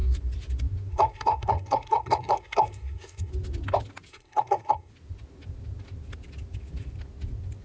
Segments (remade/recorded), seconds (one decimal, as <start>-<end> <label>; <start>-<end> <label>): 0.0-0.9 recorded; 0.9-3.3 remade; 3.3-4.1 recorded; 4.1-4.9 remade; 4.9-7.6 recorded